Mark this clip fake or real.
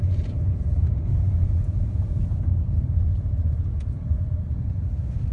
fake